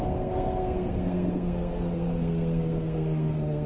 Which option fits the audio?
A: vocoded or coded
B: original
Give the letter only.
A